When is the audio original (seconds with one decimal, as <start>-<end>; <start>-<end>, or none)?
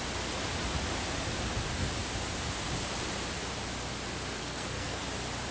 0.0-4.4; 5.0-5.5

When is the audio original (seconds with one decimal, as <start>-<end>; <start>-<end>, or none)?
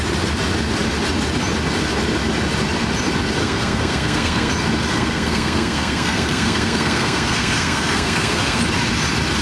0.0-3.4; 4.5-4.9; 8.6-9.4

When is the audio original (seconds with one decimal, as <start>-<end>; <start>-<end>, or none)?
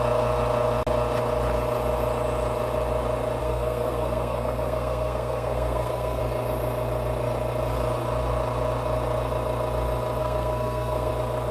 0.0-3.4; 6.2-10.2; 11.1-11.5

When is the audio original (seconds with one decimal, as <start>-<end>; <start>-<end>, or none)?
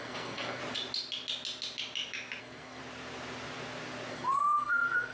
0.6-2.4; 2.8-4.1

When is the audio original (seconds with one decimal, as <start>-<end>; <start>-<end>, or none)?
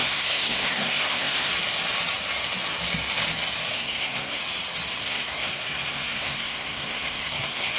1.5-3.7; 4.4-5.0